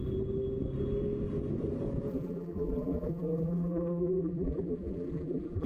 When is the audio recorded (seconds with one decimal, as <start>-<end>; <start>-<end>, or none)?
0.0-2.1